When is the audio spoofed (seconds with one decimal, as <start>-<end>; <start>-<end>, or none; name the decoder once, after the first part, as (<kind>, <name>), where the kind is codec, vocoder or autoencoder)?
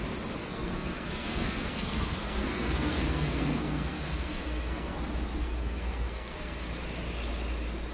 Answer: 0.4-5.0 (codec, SNAC); 5.4-6.7